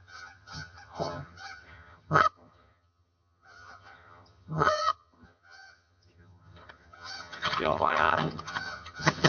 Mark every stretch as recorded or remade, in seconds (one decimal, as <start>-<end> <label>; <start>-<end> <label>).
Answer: 0.0-9.3 remade